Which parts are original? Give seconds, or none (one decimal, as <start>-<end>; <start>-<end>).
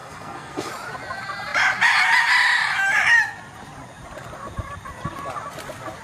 0.7-6.0